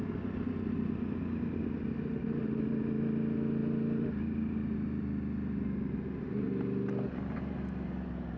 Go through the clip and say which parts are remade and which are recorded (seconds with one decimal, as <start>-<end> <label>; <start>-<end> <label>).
0.0-8.4 recorded